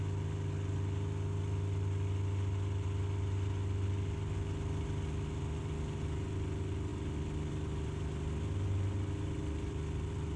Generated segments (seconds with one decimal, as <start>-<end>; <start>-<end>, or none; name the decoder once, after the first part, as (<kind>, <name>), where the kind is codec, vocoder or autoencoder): none